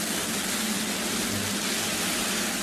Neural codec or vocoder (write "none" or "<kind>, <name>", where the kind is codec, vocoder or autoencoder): none